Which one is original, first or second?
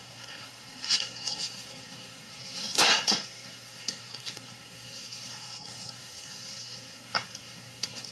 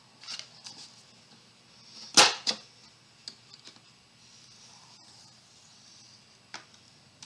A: second